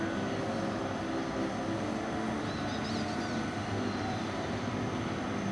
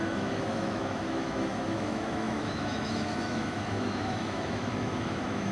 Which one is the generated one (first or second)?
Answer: second